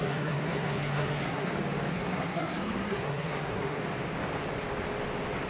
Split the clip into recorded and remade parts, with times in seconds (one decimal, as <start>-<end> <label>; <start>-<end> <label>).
0.0-1.5 remade; 1.5-1.9 recorded; 1.9-3.8 remade; 3.8-5.5 recorded